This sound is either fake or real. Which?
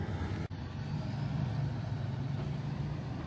fake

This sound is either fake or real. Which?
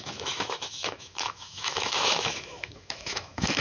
fake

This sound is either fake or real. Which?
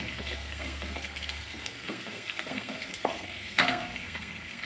fake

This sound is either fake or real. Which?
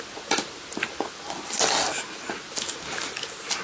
real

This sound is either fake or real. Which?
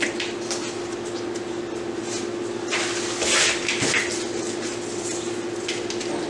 real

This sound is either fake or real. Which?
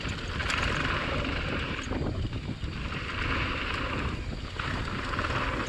fake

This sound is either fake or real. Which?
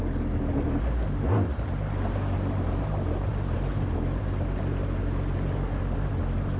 real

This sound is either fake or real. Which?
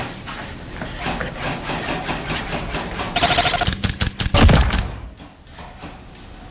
real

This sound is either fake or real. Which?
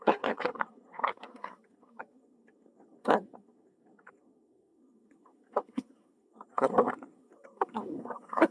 fake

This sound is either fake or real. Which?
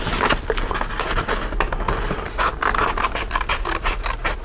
real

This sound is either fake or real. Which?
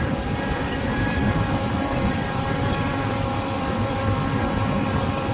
fake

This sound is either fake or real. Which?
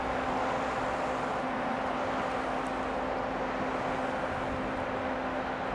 real